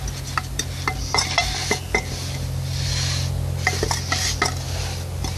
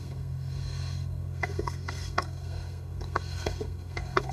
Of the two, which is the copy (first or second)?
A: second